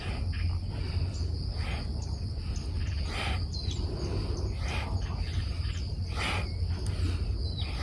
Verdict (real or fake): real